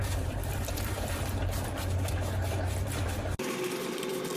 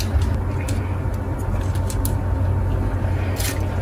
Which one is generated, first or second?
first